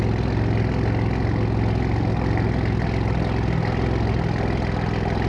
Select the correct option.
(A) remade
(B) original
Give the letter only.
B